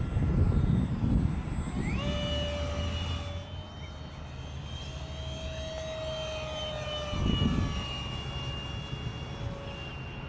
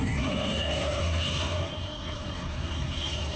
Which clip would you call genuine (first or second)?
first